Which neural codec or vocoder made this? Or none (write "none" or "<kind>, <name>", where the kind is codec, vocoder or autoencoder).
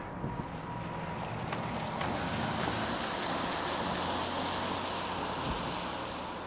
none